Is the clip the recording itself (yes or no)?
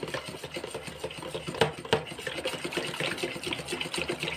yes